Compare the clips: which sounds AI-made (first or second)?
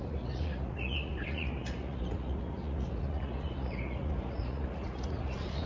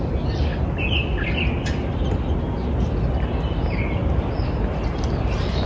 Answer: first